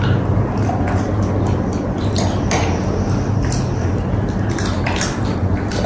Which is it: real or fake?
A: real